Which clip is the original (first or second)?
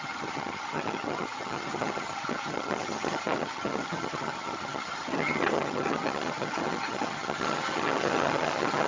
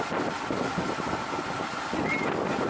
second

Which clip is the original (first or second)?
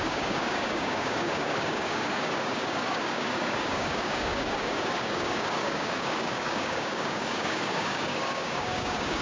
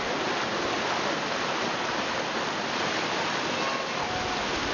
second